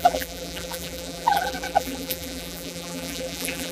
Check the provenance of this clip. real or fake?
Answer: fake